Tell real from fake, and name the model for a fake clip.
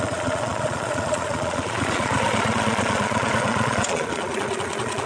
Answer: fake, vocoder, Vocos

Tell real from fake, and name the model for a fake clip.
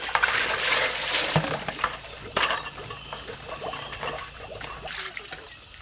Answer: real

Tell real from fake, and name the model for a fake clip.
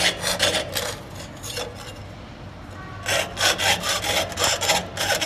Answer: real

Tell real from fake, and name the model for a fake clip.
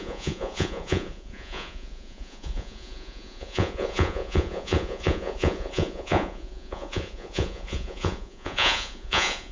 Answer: fake, vocoder, Vocos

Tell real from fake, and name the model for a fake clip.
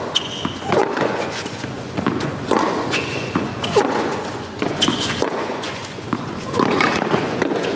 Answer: fake, vocoder, Vocos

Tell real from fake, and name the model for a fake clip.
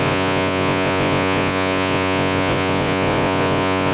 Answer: fake, vocoder, Vocos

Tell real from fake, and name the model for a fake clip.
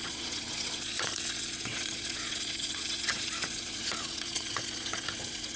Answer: fake, vocoder, Vocos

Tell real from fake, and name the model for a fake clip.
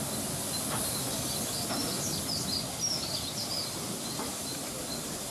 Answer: real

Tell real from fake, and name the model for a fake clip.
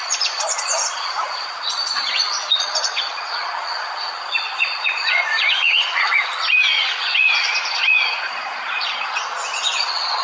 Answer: fake, vocoder, Vocos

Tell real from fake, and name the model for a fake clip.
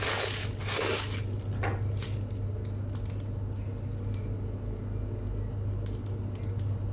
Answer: real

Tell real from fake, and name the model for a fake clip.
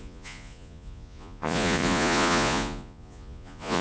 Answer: fake, vocoder, Vocos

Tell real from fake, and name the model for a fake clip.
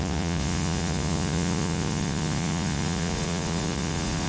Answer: fake, vocoder, Vocos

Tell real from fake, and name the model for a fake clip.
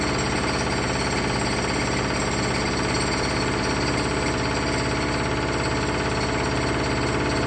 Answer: real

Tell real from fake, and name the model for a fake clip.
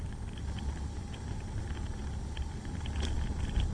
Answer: real